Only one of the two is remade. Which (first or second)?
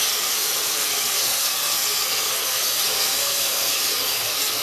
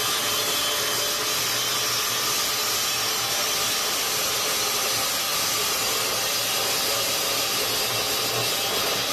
first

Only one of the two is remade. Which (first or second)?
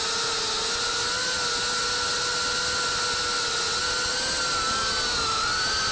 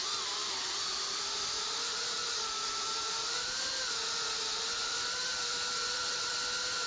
second